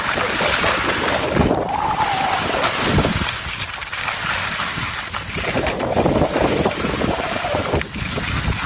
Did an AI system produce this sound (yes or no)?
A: no